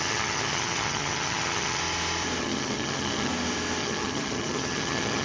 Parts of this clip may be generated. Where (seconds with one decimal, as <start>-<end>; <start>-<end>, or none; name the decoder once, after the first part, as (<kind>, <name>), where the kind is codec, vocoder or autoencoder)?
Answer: 0.0-1.8 (vocoder, HiFi-GAN); 2.4-3.3; 3.8-5.2